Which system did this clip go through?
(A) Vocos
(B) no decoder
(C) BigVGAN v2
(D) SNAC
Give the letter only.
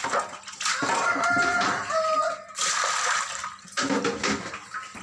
B